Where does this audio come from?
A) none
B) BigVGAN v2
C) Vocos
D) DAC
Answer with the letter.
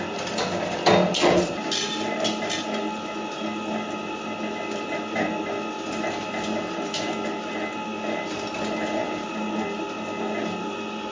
A